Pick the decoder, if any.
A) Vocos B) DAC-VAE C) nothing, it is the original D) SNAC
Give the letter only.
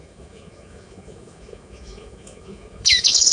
B